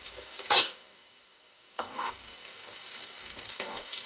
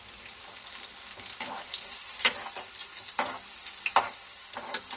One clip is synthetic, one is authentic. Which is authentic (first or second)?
second